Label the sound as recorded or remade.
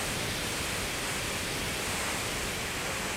recorded